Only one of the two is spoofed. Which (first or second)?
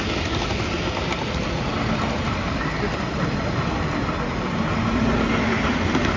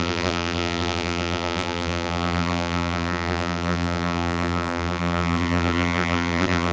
second